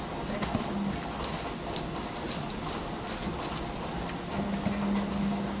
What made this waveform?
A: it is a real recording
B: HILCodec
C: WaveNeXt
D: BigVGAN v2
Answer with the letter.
A